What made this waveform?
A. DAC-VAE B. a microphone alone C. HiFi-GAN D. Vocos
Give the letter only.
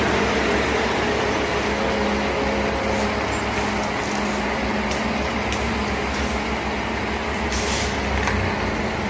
B